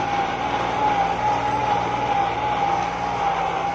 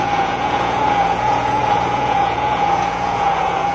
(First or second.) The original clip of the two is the first